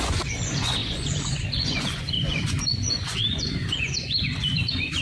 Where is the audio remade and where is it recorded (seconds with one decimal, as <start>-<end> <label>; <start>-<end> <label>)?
0.0-5.0 remade